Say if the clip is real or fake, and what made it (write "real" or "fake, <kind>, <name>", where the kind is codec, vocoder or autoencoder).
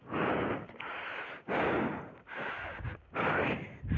real